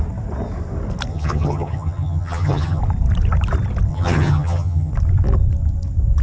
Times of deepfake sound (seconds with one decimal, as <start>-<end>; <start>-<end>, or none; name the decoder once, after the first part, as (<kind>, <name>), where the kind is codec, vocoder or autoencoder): 1.1-2.8 (vocoder, HiFi-GAN); 3.9-4.9